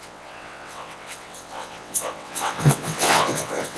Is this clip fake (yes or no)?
yes